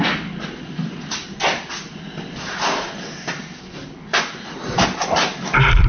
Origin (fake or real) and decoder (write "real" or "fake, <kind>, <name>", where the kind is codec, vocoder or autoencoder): real